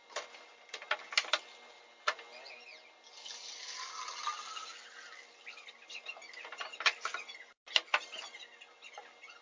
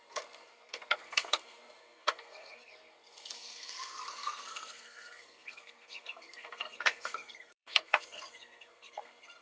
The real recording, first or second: first